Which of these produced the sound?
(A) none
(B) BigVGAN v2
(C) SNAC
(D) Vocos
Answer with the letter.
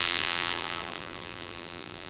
B